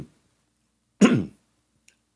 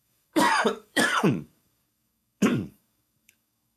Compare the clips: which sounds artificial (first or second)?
second